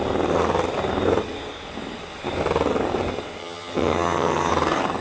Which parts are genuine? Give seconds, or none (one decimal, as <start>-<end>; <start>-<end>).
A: 0.0-3.4; 4.5-5.0